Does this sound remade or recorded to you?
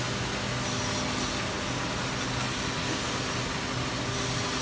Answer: recorded